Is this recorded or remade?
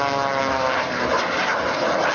recorded